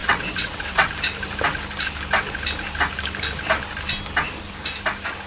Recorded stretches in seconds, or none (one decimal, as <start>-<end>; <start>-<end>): 0.9-5.3